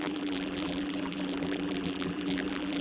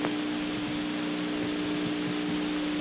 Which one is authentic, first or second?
second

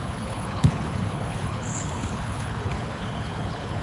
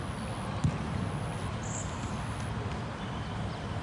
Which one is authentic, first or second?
second